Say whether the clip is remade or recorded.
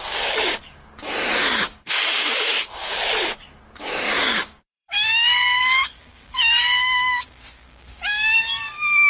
remade